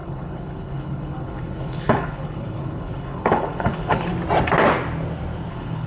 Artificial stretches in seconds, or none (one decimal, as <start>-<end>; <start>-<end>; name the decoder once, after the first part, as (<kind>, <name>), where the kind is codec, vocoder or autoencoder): 0.0-4.1 (codec, HILCodec); 5.5-5.9